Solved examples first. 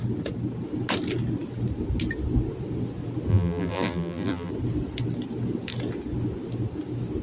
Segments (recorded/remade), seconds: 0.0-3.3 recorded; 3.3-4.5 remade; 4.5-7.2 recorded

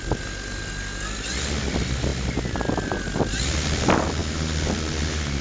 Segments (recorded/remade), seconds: 0.0-5.4 recorded

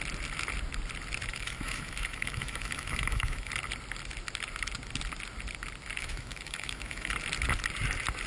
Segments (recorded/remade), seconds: 0.0-1.3 recorded; 1.3-3.5 remade; 3.5-6.0 recorded; 6.0-7.1 remade; 7.1-8.3 recorded